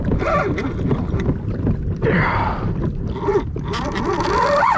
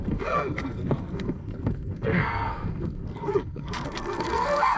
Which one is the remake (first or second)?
second